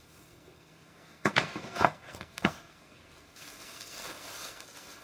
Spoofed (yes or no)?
yes